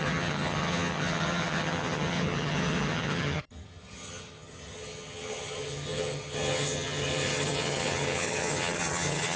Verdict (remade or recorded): remade